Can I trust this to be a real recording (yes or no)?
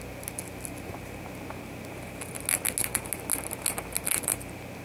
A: yes